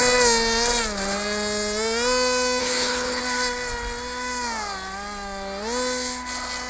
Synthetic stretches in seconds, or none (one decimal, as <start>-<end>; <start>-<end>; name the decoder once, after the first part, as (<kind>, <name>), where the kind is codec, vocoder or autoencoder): 2.6-3.2 (codec, HILCodec)